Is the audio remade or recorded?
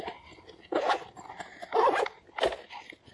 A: recorded